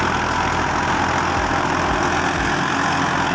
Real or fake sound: real